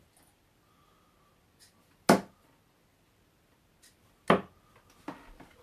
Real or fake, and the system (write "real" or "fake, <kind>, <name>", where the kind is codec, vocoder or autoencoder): real